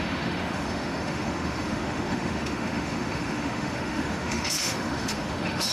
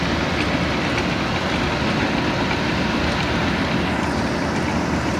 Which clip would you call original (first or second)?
second